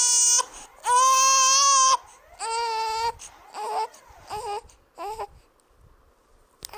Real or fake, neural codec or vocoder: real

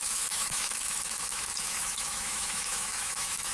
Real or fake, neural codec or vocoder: fake, autoencoder, DAC-VAE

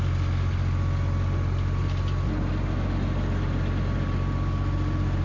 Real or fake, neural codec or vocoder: real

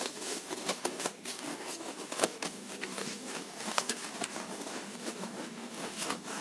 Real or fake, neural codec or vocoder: fake, codec, DAC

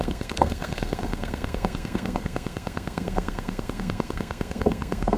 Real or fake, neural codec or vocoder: fake, codec, SNAC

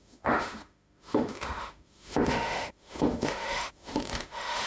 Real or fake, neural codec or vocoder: fake, autoencoder, DAC-VAE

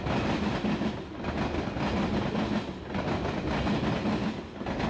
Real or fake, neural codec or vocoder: real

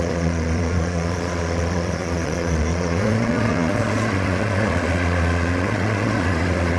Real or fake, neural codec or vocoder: fake, vocoder, Vocos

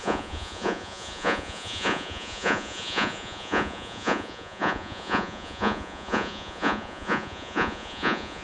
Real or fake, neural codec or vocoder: fake, vocoder, Vocos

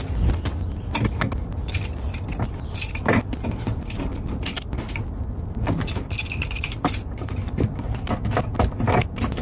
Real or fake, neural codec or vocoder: real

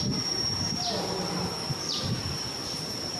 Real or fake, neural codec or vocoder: fake, vocoder, BigVGAN v2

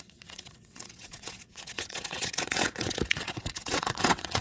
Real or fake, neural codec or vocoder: fake, vocoder, WaveNeXt